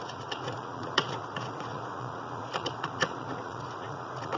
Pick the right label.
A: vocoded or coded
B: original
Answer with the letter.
A